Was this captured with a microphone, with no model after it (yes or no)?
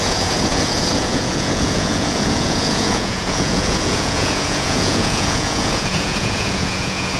no